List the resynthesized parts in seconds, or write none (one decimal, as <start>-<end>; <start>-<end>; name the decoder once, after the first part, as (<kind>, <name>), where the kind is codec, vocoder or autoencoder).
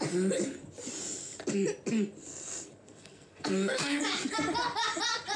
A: 2.3-4.0 (codec, SNAC)